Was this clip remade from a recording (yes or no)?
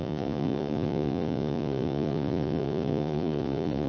yes